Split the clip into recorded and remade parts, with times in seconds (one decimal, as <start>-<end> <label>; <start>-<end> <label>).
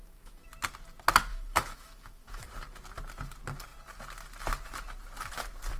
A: 0.0-0.5 remade; 0.5-1.3 recorded; 1.3-2.5 remade; 2.5-5.8 recorded